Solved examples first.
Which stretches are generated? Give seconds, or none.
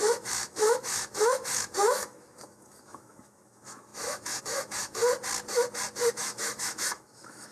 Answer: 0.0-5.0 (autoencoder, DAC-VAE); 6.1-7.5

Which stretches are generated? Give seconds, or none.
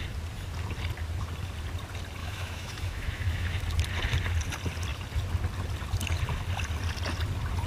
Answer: 2.2-3.6 (autoencoder, DAC-VAE)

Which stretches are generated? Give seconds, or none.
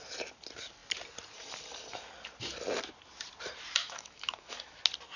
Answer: 3.8-4.8 (autoencoder, DAC-VAE)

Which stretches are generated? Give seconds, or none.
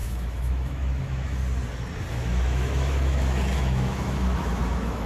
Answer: 0.0-1.4 (autoencoder, DAC-VAE); 2.1-5.1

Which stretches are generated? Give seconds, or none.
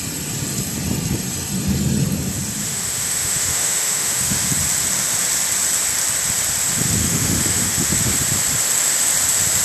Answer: 2.6-4.5 (autoencoder, DAC-VAE); 7.0-7.9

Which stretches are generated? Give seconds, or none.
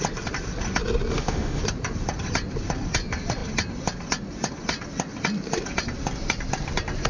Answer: 1.1-1.6 (autoencoder, DAC-VAE)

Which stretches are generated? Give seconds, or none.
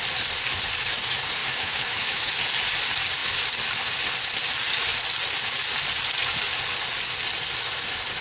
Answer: 1.4-2.3 (autoencoder, DAC-VAE)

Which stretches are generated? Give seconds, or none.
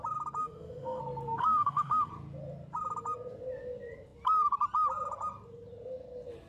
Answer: 0.4-1.0 (autoencoder, DAC-VAE); 1.4-2.1